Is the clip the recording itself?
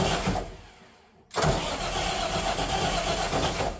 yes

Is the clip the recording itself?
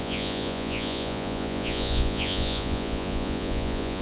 no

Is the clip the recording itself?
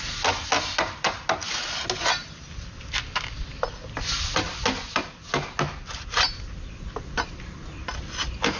yes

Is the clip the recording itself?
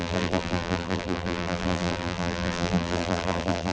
no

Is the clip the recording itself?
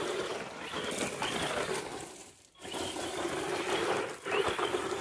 yes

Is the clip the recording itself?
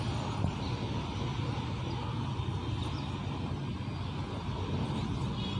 yes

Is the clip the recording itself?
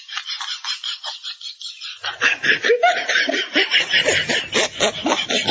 yes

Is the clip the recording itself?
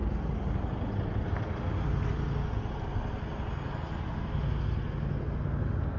yes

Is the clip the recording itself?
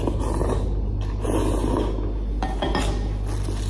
yes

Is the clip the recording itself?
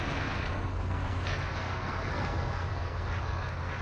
no